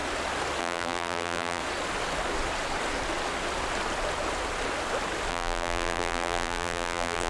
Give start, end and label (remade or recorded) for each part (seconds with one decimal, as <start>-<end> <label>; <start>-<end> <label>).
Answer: 0.0-0.6 recorded; 0.6-1.6 remade; 1.6-5.3 recorded; 5.3-7.3 remade